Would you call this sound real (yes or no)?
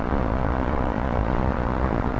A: no